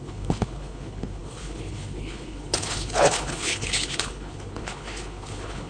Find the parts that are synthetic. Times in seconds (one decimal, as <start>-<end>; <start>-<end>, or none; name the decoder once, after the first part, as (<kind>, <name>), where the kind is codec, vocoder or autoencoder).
0.0-5.7 (codec, HILCodec)